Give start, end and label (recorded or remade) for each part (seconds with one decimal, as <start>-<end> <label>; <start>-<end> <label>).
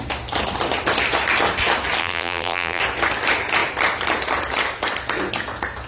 0.0-2.0 recorded; 2.0-2.8 remade; 2.8-5.9 recorded